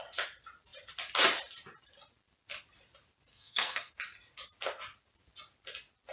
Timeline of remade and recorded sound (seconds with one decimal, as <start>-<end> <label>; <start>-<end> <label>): 0.0-3.3 recorded; 3.3-3.9 remade; 3.9-6.1 recorded